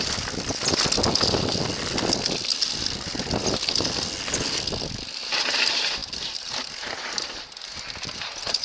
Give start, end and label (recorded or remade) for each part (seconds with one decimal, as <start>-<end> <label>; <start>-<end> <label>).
0.0-8.6 recorded